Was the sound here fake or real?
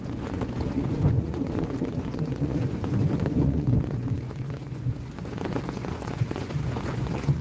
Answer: fake